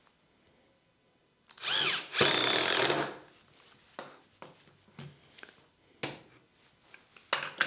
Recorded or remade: recorded